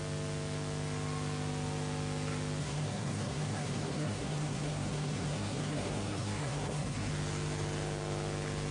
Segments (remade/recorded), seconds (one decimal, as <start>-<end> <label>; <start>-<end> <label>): 0.0-2.6 recorded; 2.6-7.1 remade; 7.1-8.7 recorded